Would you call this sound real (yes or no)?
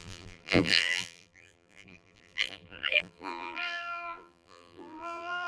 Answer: no